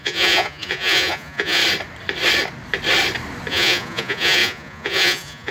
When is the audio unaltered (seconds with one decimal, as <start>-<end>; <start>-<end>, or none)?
1.6-3.5